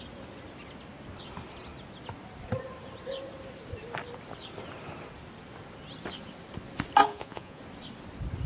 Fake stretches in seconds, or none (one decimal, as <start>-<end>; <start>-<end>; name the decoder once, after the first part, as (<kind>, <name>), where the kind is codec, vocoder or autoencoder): 7.1-7.6 (vocoder, Vocos)